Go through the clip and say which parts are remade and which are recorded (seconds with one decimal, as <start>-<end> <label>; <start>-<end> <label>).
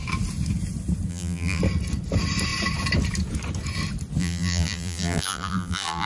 0.0-1.1 recorded; 1.1-1.6 remade; 1.6-4.2 recorded; 4.2-6.1 remade